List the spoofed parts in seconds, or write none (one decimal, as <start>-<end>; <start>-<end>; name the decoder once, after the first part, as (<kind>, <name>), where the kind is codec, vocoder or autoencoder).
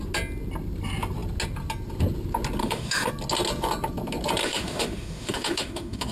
2.6-3.1 (autoencoder, DAC-VAE); 4.4-6.1